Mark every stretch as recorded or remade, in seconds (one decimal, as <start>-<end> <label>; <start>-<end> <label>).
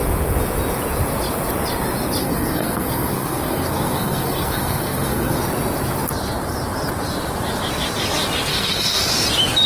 0.0-2.2 recorded; 2.2-5.4 remade; 5.4-8.5 recorded; 8.5-9.1 remade; 9.1-9.7 recorded